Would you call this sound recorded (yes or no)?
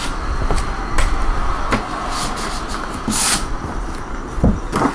yes